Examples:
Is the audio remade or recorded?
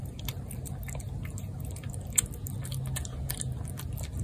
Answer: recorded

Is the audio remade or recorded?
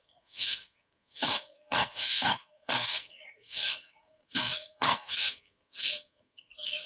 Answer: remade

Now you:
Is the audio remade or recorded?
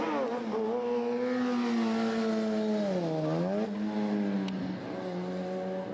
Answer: recorded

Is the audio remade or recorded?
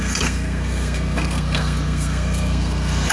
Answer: remade